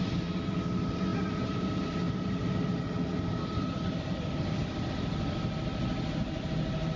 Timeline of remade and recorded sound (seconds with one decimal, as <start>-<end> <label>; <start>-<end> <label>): 0.0-7.0 recorded